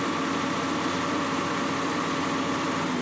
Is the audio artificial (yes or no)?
no